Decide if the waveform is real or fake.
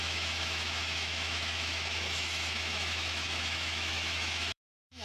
fake